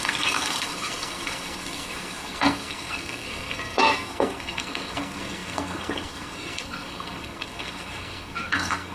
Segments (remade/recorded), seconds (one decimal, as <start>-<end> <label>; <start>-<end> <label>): 0.0-8.9 remade